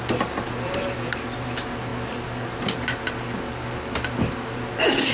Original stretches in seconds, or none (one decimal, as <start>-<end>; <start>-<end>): 0.0-5.1